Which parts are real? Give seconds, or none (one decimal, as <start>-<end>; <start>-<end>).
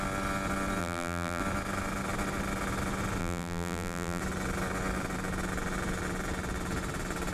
0.0-0.8; 1.4-3.2; 4.2-7.3